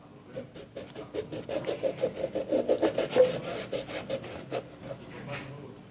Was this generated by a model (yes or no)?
no